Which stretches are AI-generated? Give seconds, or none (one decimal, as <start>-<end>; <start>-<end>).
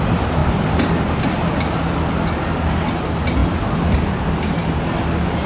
0.4-2.8; 3.4-4.3